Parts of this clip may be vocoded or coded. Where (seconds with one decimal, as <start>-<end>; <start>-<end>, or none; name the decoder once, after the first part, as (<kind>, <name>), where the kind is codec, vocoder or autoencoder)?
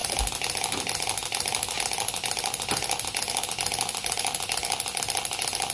none